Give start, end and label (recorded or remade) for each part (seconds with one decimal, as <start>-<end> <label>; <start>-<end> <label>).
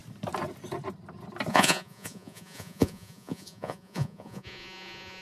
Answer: 0.0-1.5 recorded; 1.5-5.2 remade